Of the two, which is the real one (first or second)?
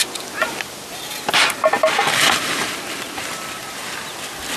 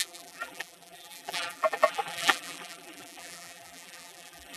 first